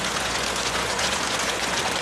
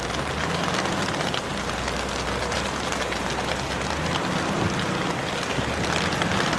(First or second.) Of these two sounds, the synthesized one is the first